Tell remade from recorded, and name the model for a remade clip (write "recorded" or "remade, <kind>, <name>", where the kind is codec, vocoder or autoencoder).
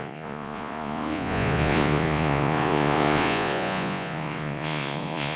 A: remade, vocoder, Vocos